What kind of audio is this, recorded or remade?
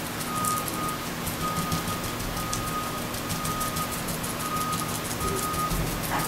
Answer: recorded